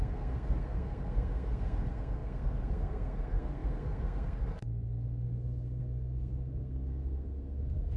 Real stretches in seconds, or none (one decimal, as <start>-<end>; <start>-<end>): none